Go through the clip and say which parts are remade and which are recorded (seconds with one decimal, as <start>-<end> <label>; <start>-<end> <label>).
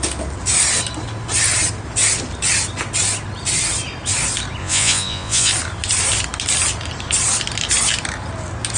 0.0-4.6 recorded; 4.6-5.5 remade; 5.5-8.8 recorded